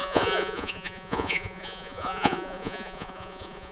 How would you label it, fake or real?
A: fake